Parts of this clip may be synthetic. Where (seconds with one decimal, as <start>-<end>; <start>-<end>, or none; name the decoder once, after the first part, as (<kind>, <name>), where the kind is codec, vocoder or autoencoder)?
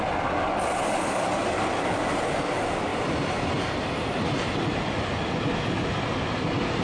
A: none